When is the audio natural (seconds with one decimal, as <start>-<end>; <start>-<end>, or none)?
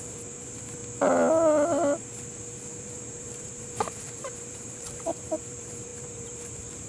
0.8-2.6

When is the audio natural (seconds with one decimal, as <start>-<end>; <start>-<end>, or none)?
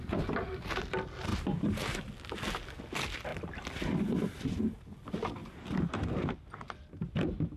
0.0-1.3; 2.1-5.4; 6.3-7.6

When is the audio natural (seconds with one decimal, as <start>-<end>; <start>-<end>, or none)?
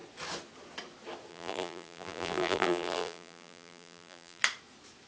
0.0-1.3; 4.4-5.1